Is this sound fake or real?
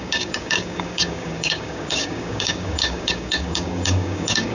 fake